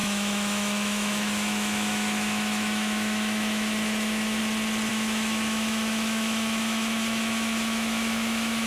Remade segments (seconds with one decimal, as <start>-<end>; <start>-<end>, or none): 0.0-4.4; 4.9-8.7